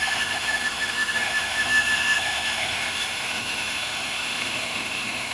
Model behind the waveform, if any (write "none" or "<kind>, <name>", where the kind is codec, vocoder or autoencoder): autoencoder, DAC-VAE